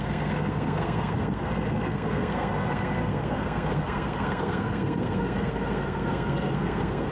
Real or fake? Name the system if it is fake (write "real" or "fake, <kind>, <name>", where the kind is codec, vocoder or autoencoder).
fake, codec, SNAC